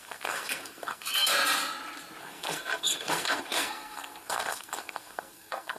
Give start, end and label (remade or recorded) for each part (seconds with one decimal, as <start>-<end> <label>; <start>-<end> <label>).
0.0-1.3 remade; 1.3-2.2 recorded; 2.2-5.8 remade